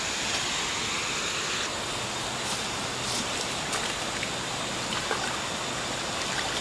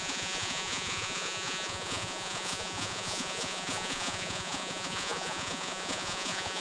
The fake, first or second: second